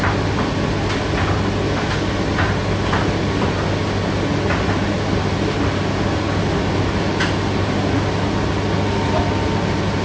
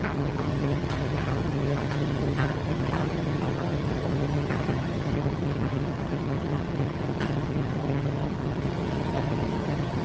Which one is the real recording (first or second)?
first